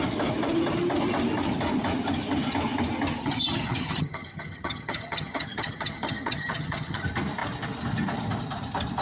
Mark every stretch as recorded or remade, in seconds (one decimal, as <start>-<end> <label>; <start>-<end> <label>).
0.0-3.2 recorded; 3.2-7.0 remade; 7.0-9.0 recorded